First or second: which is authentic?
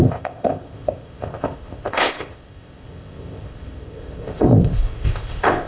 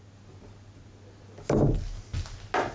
second